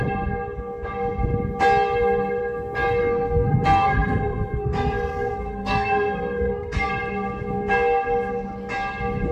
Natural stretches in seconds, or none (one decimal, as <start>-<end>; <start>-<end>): 0.0-3.0; 6.9-9.3

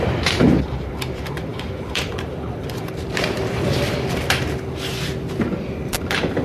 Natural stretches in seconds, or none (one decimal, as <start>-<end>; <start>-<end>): 5.1-5.9

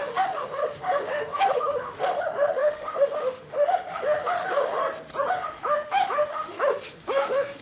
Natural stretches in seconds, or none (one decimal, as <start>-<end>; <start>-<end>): 4.8-5.3

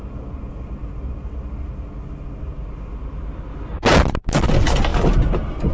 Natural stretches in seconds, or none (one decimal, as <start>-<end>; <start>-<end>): 0.0-5.7

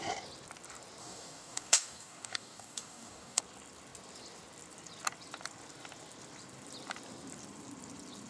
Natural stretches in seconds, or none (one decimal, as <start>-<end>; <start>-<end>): 0.0-1.0; 3.4-8.3